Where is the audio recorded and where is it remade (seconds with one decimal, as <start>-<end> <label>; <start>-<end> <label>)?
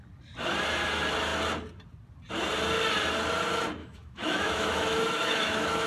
0.0-3.8 recorded; 3.8-5.9 remade